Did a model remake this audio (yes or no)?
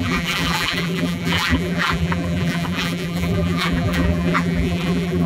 yes